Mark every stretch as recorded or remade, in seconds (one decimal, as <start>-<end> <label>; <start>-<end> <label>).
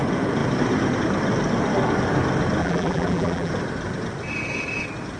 0.0-2.6 recorded; 2.6-3.5 remade; 3.5-5.2 recorded